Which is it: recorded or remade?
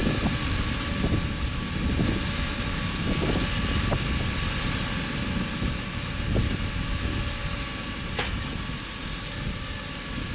recorded